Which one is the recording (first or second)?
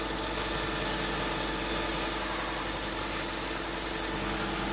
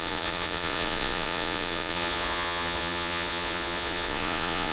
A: first